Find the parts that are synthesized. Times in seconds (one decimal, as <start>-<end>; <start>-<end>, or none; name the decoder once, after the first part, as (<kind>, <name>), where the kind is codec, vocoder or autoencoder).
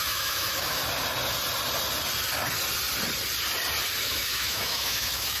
0.0-0.8 (autoencoder, DAC-VAE); 4.0-5.4